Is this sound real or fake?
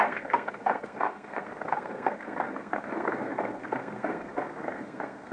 fake